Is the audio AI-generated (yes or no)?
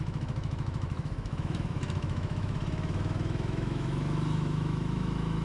yes